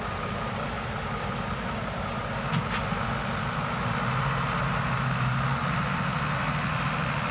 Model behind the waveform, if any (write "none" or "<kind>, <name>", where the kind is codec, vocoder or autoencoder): none